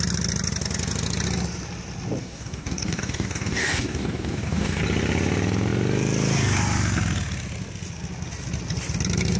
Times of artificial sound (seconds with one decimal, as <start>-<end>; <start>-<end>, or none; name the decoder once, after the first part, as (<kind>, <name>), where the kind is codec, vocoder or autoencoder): 2.2-4.8 (codec, DAC)